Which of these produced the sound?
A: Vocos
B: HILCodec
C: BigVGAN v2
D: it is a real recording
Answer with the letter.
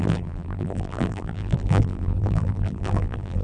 C